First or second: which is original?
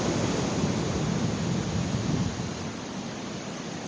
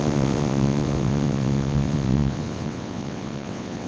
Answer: first